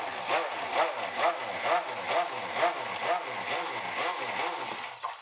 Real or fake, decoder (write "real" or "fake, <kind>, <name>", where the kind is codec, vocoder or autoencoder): real